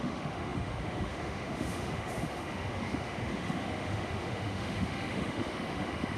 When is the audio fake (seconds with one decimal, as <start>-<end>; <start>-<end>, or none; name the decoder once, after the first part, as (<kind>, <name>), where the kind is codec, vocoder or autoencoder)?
0.0-6.2 (autoencoder, DAC-VAE)